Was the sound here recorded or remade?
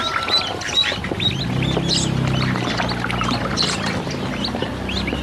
recorded